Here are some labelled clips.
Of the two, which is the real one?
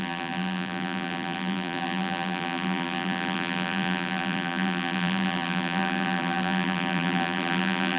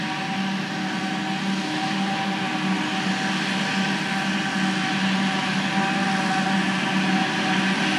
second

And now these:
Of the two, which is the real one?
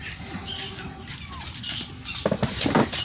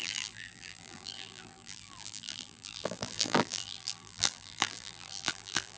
first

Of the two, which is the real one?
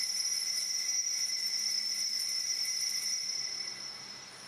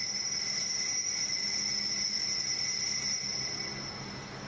second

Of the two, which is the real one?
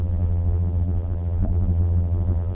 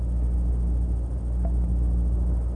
second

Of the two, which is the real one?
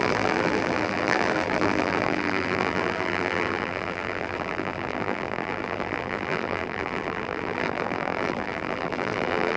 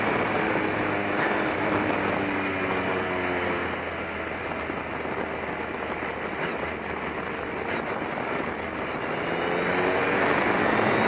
second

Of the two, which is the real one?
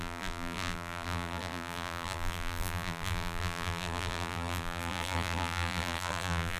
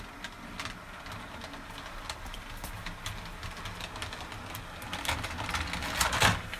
second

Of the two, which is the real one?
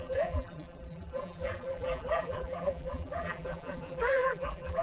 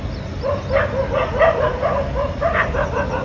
second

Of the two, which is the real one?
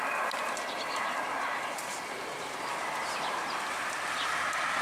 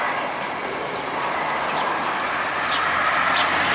second